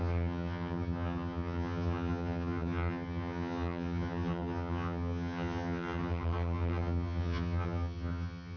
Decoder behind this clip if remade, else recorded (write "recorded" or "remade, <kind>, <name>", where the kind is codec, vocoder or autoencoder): remade, vocoder, HiFi-GAN